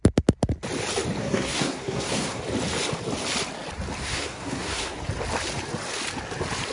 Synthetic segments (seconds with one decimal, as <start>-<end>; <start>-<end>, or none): 1.2-2.4; 4.0-5.0